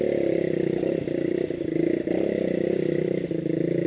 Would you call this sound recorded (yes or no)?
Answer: yes